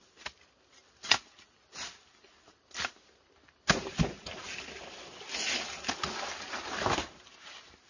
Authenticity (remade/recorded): recorded